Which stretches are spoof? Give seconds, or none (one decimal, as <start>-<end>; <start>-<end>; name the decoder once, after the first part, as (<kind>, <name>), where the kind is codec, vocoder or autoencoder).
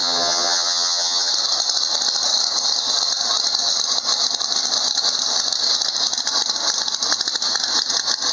0.0-1.3 (vocoder, HiFi-GAN)